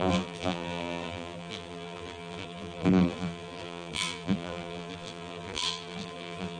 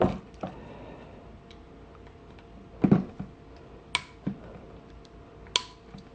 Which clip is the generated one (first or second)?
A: first